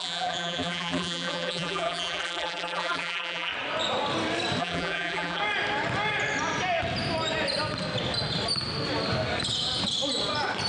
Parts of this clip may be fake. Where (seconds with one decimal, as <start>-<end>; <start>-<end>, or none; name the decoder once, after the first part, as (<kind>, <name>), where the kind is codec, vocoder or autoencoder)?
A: 0.0-3.5 (vocoder, BigVGAN v2); 4.6-5.4